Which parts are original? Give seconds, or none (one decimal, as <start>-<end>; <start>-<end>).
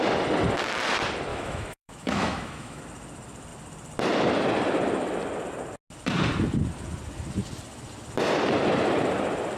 0.0-1.3; 2.8-9.6